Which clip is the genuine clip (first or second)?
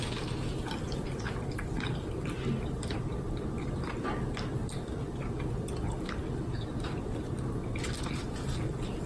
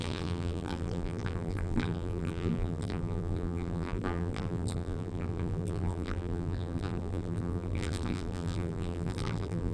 first